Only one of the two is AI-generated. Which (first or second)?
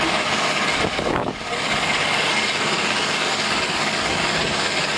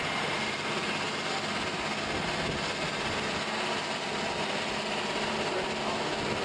first